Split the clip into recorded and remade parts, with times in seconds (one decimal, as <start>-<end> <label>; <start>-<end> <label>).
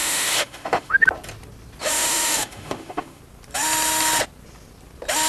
0.0-0.9 remade; 0.9-1.8 recorded; 1.8-3.2 remade; 3.2-5.3 recorded